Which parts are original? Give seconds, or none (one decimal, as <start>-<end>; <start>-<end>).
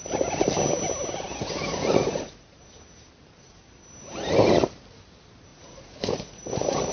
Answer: 0.0-1.4; 2.6-5.5